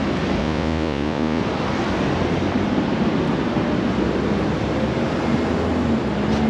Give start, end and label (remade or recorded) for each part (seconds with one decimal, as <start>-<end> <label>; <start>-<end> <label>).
0.0-0.4 recorded; 0.4-1.4 remade; 1.4-6.5 recorded